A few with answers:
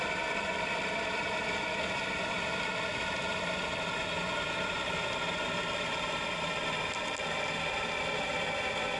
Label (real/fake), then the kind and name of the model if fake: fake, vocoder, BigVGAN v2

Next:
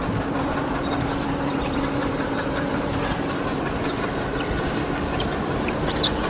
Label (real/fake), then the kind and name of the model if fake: fake, vocoder, BigVGAN v2